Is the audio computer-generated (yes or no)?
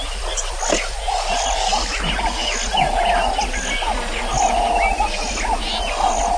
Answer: no